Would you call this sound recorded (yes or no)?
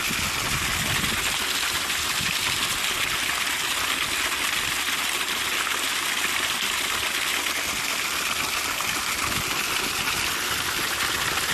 yes